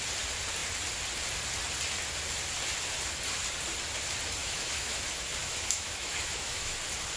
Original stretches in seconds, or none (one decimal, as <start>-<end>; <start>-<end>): 0.0-4.4; 5.0-5.4; 6.8-7.2